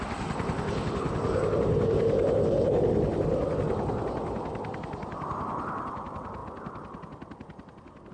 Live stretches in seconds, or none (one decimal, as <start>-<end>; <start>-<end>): 0.0-8.1